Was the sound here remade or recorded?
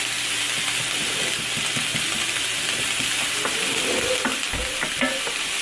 recorded